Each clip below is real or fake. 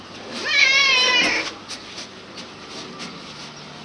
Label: real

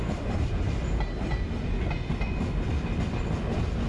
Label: real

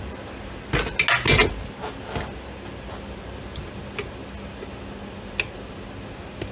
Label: real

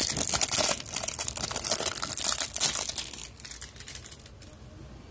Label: real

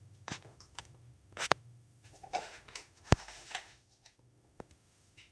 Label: fake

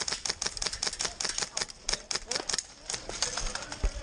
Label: real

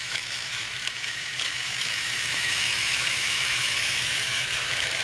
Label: fake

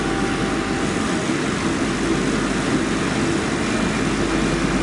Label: real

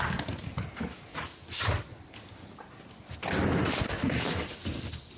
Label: real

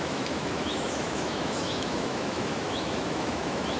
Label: fake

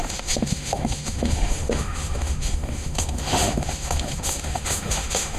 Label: fake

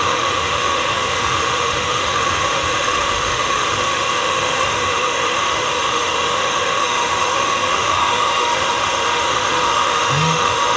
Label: fake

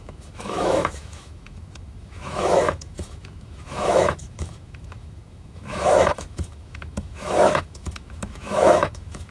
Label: fake